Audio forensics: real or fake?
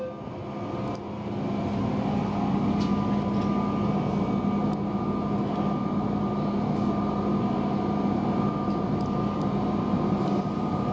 real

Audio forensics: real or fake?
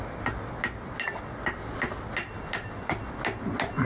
real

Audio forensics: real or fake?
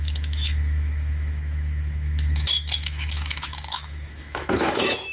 fake